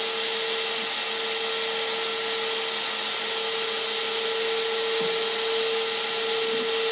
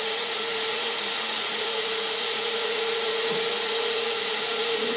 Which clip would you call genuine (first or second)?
first